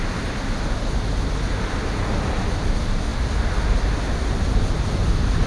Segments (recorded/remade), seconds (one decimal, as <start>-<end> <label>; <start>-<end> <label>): 0.0-5.5 recorded